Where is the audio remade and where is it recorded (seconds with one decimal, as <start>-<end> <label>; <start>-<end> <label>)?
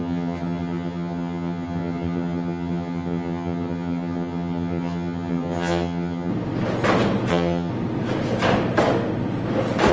0.0-6.3 remade; 6.3-7.3 recorded; 7.3-7.7 remade; 7.7-9.9 recorded